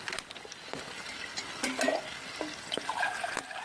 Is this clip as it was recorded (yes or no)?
yes